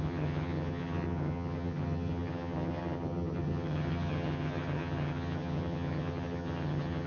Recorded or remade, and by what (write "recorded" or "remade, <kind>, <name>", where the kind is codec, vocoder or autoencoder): remade, vocoder, HiFi-GAN